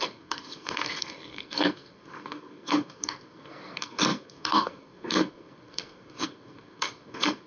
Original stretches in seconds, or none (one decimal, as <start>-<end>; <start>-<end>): none